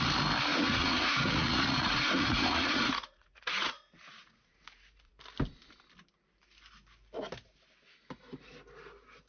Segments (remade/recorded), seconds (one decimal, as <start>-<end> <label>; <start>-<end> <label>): 0.0-0.5 recorded; 0.5-5.1 remade; 5.1-9.3 recorded